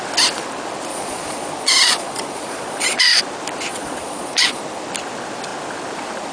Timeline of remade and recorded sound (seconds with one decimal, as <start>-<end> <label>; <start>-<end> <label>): 0.0-0.9 recorded; 0.9-3.2 remade; 3.2-3.7 recorded; 3.7-4.6 remade; 4.6-6.3 recorded